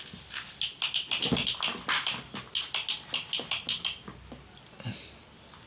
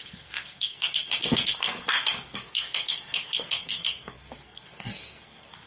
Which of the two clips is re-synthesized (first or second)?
second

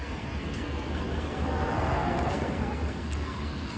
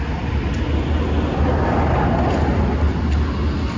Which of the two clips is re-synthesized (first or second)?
first